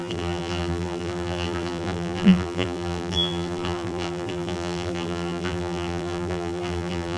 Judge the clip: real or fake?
fake